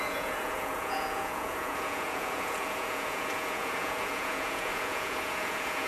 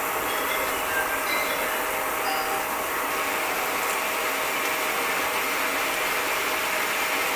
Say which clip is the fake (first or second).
first